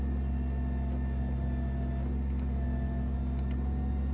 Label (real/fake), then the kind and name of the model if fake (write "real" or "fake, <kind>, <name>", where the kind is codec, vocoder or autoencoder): real